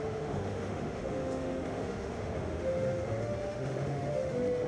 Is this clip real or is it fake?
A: fake